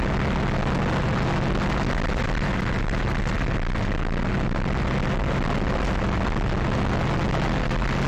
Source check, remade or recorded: recorded